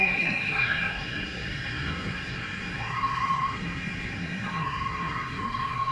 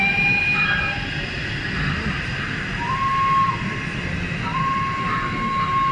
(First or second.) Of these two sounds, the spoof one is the first